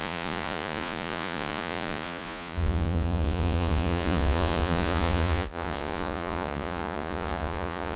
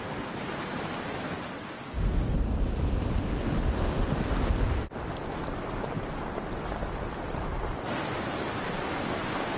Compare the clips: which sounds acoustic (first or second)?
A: second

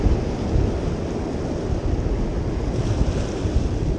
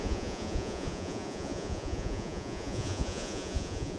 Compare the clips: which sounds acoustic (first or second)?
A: first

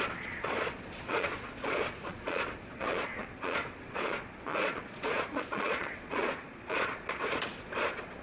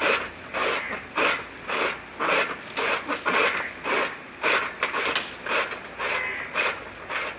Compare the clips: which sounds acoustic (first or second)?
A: second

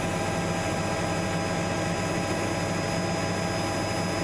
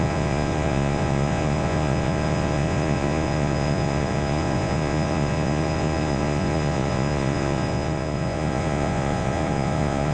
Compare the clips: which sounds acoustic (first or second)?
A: first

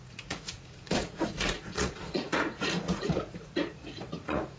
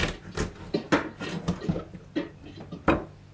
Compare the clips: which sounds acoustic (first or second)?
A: second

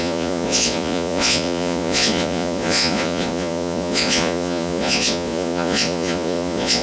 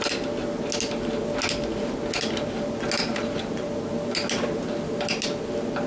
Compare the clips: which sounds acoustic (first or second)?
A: second